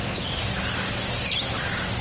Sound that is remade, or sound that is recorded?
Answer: recorded